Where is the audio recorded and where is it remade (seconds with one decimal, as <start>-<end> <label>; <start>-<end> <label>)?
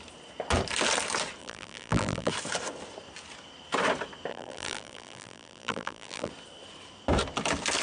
0.0-1.4 recorded; 1.4-2.3 remade; 2.3-4.3 recorded; 4.3-6.3 remade; 6.3-7.8 recorded